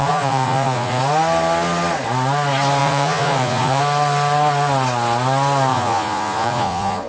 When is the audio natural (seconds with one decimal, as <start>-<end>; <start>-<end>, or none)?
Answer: 1.0-2.8; 3.8-5.7